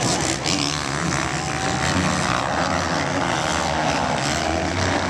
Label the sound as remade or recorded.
recorded